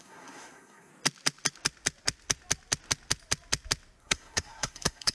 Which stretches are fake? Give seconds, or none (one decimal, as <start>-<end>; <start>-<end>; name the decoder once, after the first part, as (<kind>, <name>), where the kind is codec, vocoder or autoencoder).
0.0-0.9 (codec, SNAC); 4.0-5.1